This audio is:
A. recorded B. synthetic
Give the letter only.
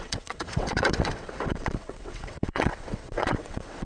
B